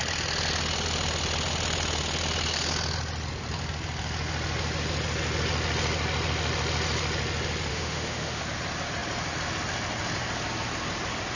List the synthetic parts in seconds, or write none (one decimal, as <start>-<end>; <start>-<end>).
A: 7.7-8.4